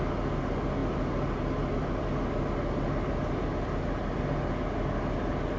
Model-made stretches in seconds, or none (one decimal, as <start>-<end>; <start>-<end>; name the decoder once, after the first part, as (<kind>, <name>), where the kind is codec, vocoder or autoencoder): none